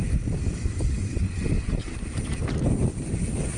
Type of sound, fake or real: real